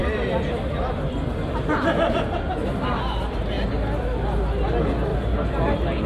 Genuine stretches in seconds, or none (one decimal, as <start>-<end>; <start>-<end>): 2.4-5.1; 5.6-6.1